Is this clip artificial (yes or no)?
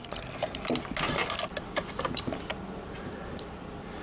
no